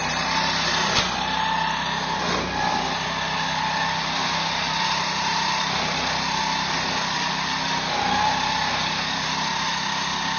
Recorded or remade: remade